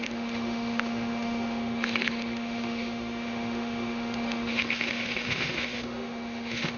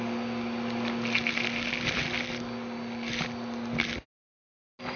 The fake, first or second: first